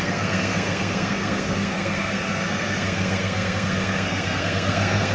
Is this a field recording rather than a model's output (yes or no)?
no